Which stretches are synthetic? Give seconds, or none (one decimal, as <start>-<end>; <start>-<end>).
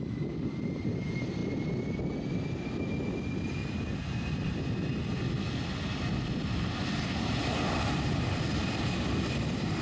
0.0-1.4; 2.5-3.6; 6.8-9.8